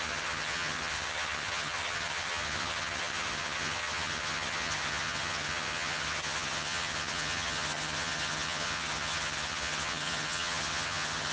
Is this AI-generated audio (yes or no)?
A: yes